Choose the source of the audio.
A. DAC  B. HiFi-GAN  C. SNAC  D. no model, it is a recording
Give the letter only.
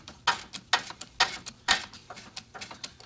D